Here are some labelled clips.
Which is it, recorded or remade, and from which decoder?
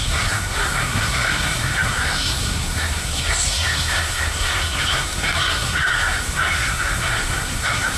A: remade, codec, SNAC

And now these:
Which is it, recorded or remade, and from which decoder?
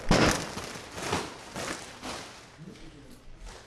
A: recorded